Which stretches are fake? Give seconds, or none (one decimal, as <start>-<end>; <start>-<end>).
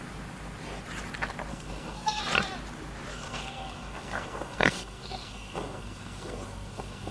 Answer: 1.5-2.2; 3.1-7.1